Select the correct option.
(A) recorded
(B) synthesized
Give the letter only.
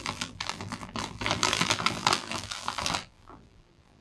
B